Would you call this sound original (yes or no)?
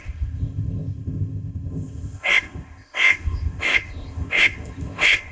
no